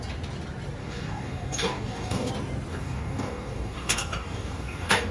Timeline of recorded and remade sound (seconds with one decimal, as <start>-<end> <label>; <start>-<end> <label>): 0.0-0.8 recorded; 0.8-2.3 remade; 2.3-2.7 recorded; 2.7-5.1 remade